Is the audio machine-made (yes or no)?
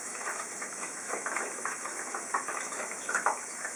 yes